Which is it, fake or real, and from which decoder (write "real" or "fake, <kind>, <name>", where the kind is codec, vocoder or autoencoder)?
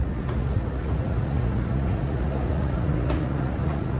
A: fake, vocoder, Vocos